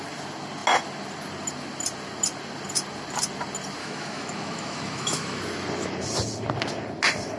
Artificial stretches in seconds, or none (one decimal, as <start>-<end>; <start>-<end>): 3.8-5.4